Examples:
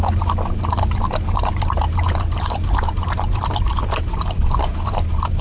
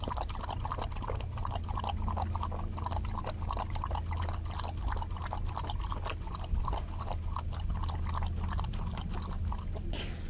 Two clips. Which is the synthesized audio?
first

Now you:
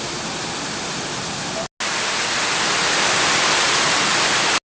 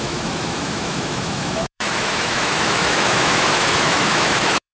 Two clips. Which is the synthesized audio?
second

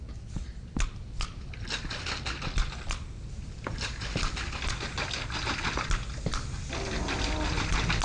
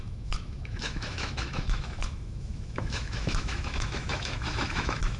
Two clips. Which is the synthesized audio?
second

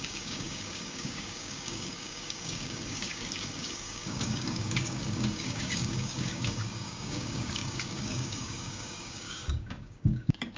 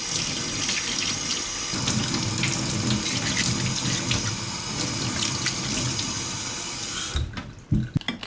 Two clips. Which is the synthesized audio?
first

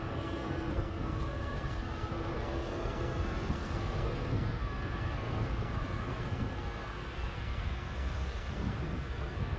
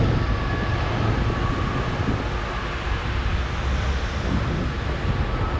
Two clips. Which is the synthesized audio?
first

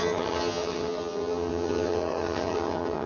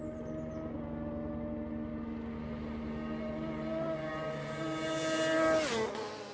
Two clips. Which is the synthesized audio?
first